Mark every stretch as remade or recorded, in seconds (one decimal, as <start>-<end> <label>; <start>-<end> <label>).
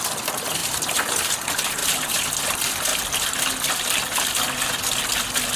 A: 0.0-5.6 recorded